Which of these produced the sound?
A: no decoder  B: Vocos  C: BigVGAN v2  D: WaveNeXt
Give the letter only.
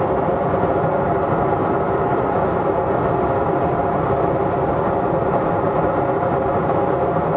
A